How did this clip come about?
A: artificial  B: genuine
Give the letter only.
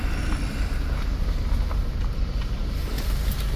B